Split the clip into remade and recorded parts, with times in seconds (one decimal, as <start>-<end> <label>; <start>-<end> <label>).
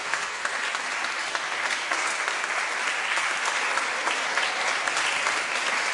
0.0-0.4 remade; 0.4-1.7 recorded; 1.7-2.1 remade; 2.1-5.9 recorded